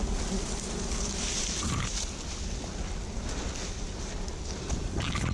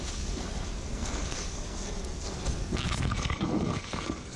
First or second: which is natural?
first